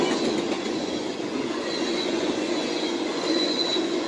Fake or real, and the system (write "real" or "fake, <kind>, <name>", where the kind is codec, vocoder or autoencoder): fake, vocoder, Vocos